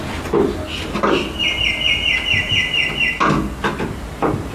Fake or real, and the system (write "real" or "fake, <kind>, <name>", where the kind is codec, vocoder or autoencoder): real